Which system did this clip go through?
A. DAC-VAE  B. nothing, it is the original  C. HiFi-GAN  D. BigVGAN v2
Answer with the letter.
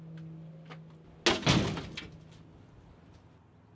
B